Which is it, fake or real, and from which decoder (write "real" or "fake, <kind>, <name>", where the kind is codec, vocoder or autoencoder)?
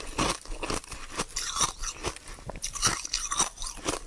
real